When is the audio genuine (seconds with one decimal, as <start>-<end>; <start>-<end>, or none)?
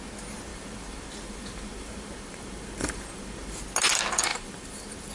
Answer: 0.0-0.5; 3.6-4.3